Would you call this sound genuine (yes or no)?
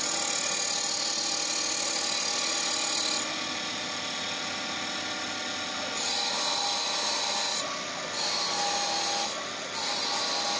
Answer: yes